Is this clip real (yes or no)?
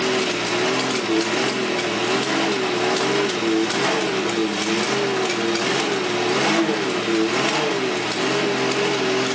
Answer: yes